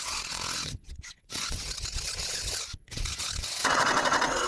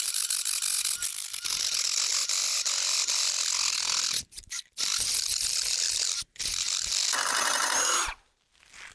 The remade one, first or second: first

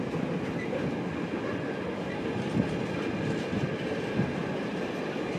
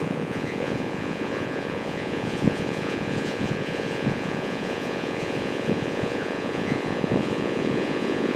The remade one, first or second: second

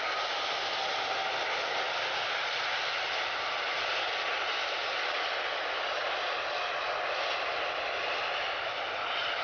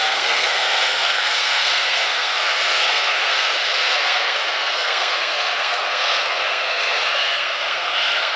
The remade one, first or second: second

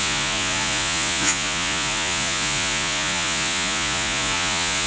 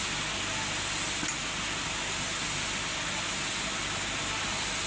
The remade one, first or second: first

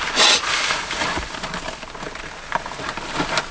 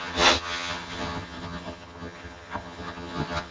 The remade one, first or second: second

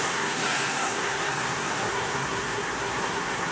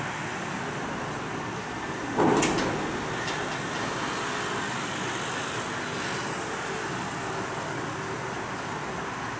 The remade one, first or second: first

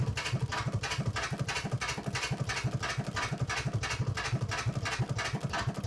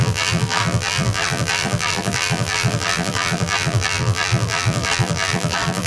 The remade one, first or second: second